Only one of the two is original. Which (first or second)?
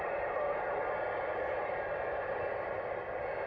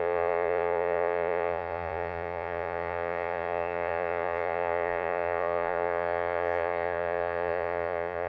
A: first